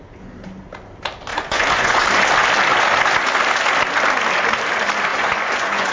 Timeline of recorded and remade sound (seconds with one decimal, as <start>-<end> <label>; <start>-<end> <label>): 0.0-1.3 recorded; 1.3-2.0 remade; 2.0-5.1 recorded; 5.1-5.9 remade